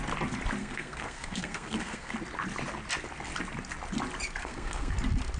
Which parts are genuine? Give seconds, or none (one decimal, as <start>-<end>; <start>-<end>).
0.0-0.6; 2.1-4.4; 4.9-5.4